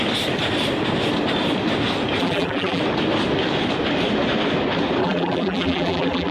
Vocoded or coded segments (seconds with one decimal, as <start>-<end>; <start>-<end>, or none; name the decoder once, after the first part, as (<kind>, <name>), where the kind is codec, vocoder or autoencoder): 2.2-2.8 (vocoder, BigVGAN v2); 5.0-6.3